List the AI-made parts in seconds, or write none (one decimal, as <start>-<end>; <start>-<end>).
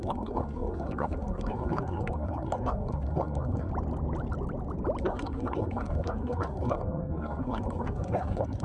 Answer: 0.0-3.7; 5.0-8.6